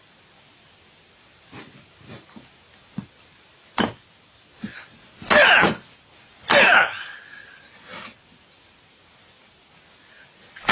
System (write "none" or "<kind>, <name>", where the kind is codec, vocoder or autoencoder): none